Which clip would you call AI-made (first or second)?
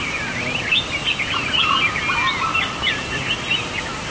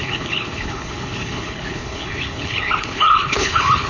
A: second